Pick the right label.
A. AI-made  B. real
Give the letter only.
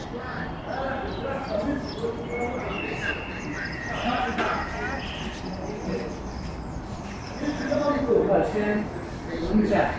B